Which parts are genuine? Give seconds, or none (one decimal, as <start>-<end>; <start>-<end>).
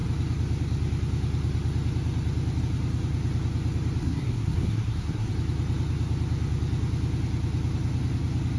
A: 0.0-4.0; 5.3-8.6